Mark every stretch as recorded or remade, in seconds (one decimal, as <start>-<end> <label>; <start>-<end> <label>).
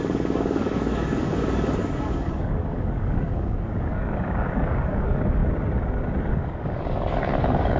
0.0-5.4 remade; 5.4-6.3 recorded; 6.3-7.8 remade